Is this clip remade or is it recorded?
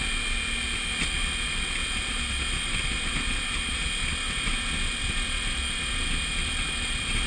recorded